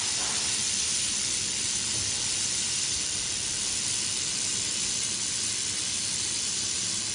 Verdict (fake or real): real